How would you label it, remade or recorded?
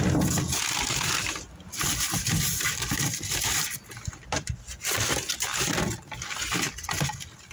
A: recorded